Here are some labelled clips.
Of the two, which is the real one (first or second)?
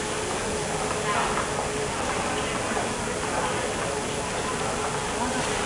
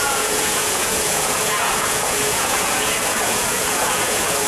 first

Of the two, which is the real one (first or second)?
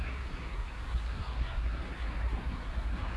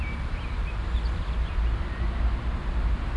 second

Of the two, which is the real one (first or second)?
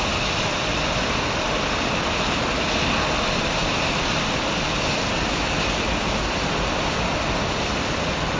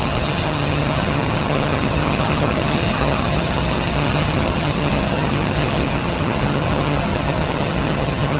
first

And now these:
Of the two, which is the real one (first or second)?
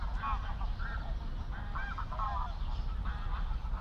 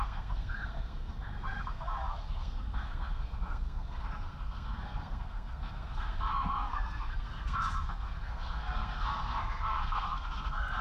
first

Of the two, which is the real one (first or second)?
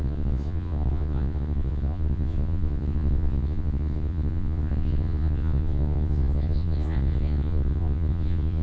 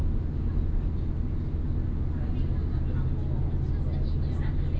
second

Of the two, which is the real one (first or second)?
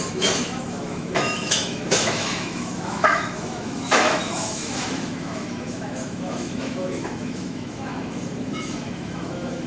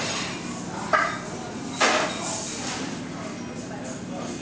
second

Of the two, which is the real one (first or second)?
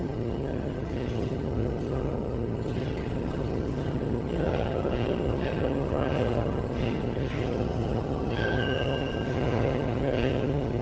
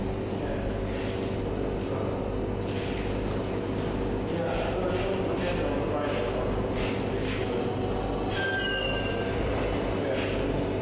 second